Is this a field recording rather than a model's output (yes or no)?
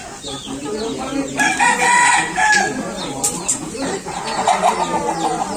yes